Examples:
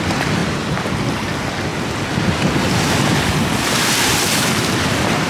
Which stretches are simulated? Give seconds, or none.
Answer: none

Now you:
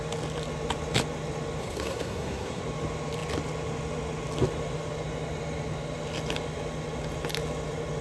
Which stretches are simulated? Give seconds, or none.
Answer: 1.6-2.6